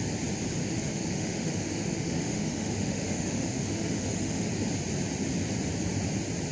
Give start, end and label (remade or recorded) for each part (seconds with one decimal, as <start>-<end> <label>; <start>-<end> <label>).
0.0-0.6 recorded; 0.6-4.5 remade; 4.5-6.5 recorded